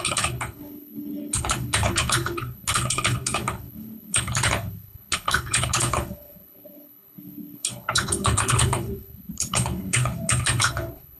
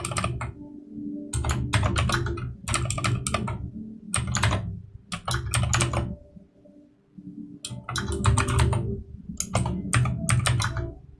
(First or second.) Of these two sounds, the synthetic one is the first